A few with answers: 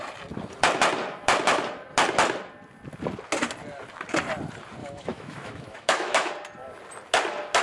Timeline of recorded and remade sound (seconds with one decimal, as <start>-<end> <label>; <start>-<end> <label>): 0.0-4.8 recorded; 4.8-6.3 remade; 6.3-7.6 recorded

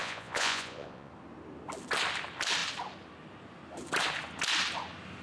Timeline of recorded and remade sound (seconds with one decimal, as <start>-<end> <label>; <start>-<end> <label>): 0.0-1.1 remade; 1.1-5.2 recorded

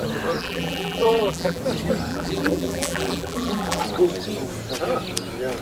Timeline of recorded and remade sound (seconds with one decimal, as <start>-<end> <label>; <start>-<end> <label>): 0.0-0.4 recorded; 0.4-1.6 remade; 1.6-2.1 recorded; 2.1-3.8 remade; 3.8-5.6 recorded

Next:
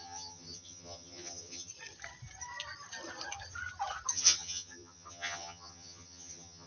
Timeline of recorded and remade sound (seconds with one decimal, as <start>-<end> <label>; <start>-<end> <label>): 0.0-1.7 remade; 1.7-4.1 recorded; 4.1-6.7 remade

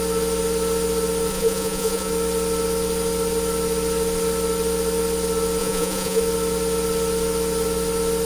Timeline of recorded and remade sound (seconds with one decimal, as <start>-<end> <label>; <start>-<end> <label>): 0.0-1.3 recorded; 1.3-2.1 remade; 2.1-5.6 recorded; 5.6-6.2 remade; 6.2-8.3 recorded

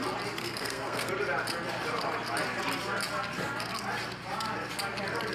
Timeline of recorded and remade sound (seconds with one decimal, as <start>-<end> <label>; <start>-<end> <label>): 0.0-0.4 recorded; 0.4-1.1 remade; 1.1-5.3 recorded